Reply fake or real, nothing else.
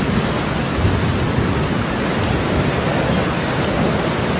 real